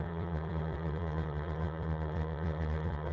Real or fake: fake